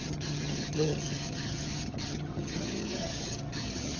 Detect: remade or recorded remade